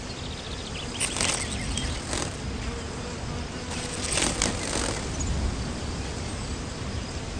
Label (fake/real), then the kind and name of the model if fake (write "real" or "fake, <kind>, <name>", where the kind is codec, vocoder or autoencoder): real